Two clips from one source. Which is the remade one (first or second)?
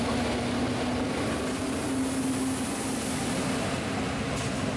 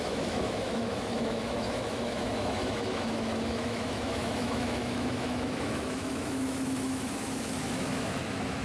second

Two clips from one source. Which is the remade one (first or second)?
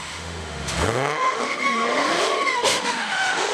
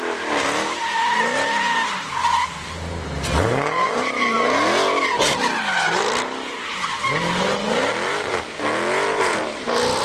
first